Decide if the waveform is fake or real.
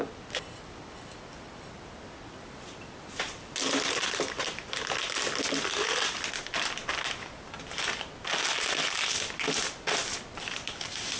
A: real